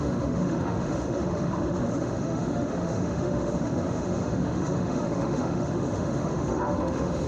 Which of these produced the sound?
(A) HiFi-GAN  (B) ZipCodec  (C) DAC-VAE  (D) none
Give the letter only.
C